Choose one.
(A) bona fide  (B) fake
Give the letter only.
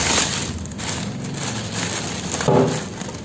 A